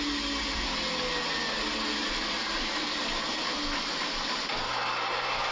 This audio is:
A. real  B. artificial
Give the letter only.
A